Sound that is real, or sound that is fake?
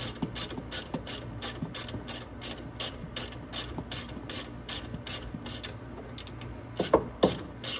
real